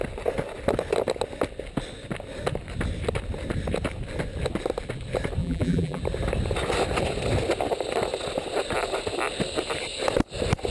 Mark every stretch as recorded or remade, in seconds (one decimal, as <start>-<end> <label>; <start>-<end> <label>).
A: 0.0-5.4 recorded; 5.4-6.0 remade; 6.0-10.7 recorded